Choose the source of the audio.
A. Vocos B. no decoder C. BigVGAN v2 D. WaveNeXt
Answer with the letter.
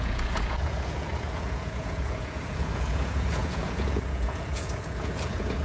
A